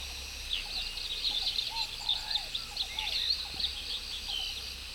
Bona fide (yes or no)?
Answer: yes